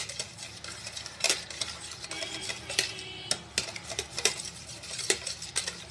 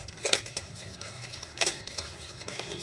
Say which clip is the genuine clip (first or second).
first